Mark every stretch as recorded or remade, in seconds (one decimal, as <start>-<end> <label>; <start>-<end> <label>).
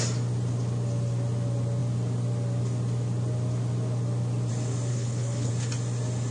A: 0.0-4.9 recorded; 4.9-5.5 remade; 5.5-6.3 recorded